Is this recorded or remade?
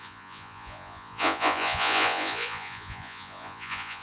remade